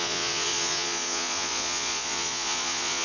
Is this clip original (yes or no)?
no